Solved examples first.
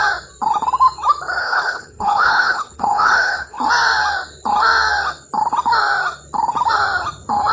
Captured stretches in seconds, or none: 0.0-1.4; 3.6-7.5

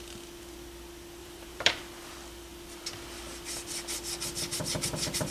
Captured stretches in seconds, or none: 0.0-1.2; 1.8-5.3

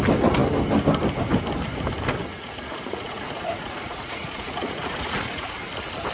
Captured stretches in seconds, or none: 0.0-2.3; 5.6-6.1

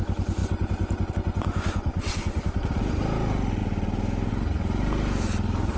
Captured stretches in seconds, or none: 0.0-1.8; 2.4-5.8

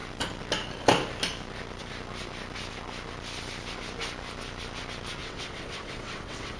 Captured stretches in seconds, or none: 0.0-5.2

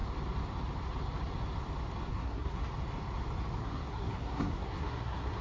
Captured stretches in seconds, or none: 0.0-2.1; 2.6-3.6